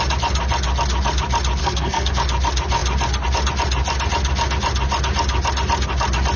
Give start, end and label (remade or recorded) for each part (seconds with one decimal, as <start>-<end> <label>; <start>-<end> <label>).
0.0-1.6 recorded; 1.6-2.1 remade; 2.1-6.4 recorded